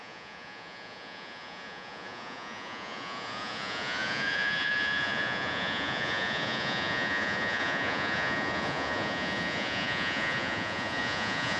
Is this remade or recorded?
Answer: remade